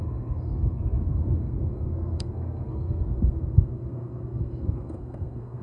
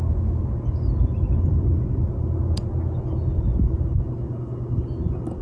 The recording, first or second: second